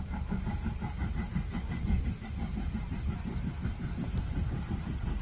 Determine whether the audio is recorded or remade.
remade